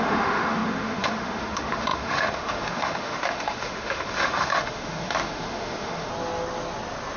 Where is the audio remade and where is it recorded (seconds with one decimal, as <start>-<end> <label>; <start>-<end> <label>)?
0.0-6.1 remade; 6.1-7.2 recorded